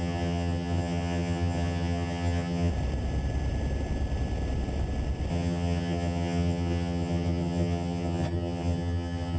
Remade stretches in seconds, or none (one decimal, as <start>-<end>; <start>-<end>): 0.0-2.7; 5.3-9.4